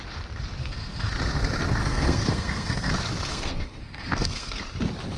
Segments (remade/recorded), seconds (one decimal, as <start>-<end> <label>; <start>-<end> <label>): 0.0-0.6 recorded; 0.6-1.1 remade; 1.1-1.8 recorded; 1.8-2.9 remade; 2.9-3.3 recorded; 3.3-4.6 remade; 4.6-5.2 recorded